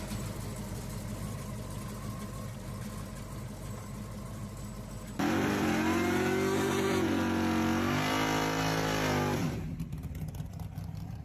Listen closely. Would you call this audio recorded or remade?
recorded